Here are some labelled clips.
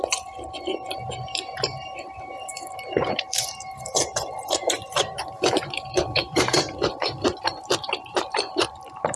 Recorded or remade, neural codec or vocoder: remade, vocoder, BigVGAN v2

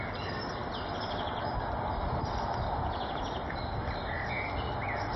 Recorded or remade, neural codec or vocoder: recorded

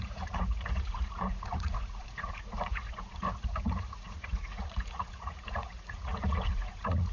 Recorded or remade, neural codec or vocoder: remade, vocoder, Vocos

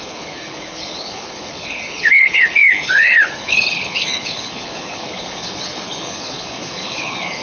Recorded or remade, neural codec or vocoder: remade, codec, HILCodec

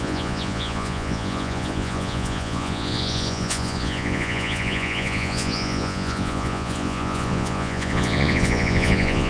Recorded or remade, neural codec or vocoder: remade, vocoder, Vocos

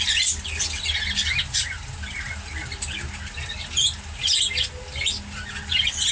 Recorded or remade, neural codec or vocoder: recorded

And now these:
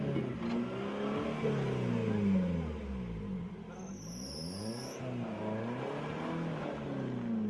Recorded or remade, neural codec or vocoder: recorded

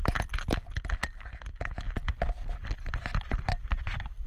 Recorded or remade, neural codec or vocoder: recorded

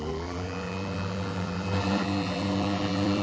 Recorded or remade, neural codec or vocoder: remade, vocoder, BigVGAN v2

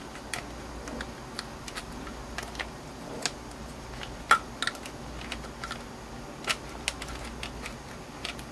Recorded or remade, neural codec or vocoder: recorded